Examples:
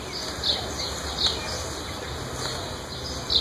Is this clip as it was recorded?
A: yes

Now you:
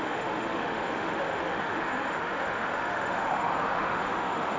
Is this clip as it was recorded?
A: no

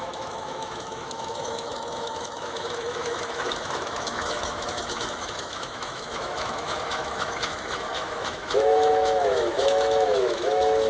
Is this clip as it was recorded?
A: no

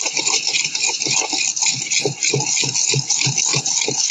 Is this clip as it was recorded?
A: yes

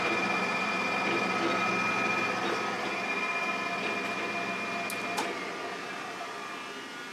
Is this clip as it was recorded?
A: yes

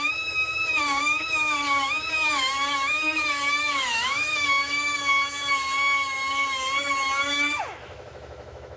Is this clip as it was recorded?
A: no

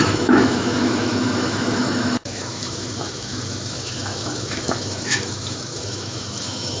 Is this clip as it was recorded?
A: no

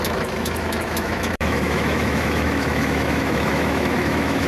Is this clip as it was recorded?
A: no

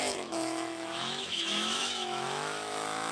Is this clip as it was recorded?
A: no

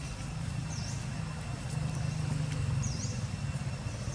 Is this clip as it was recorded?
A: yes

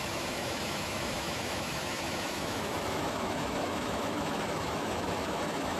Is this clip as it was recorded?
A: no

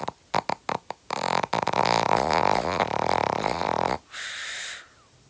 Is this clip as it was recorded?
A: yes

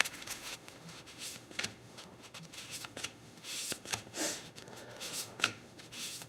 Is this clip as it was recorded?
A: no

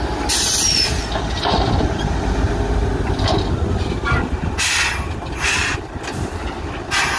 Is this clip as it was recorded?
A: yes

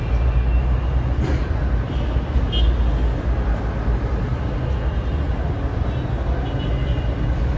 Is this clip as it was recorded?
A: yes